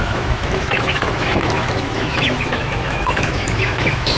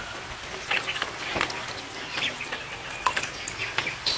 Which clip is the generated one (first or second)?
first